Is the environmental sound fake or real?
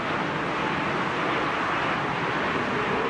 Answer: real